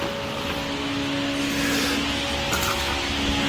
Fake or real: real